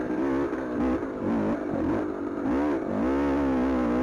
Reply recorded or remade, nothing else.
recorded